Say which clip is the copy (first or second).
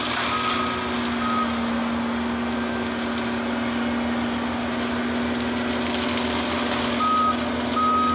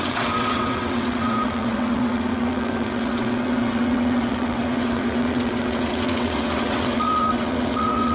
second